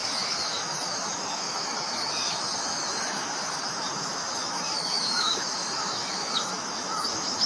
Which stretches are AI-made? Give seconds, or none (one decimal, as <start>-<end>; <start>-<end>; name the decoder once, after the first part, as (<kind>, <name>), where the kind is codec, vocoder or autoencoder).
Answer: 0.0-7.5 (autoencoder, DAC-VAE)